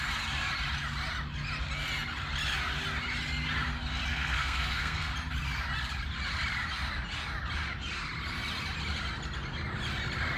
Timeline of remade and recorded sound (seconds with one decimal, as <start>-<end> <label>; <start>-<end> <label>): 0.0-4.1 recorded; 4.1-5.1 remade; 5.1-10.4 recorded